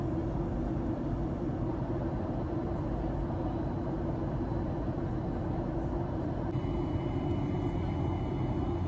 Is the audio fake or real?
real